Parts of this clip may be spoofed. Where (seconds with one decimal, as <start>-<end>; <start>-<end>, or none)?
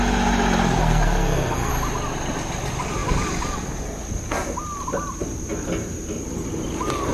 0.8-1.7